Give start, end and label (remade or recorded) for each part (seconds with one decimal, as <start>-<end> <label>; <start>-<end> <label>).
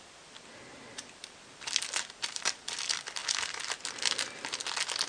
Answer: 0.0-3.2 remade; 3.2-5.1 recorded